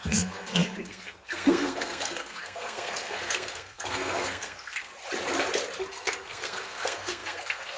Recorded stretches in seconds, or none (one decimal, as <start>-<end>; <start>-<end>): 4.9-5.9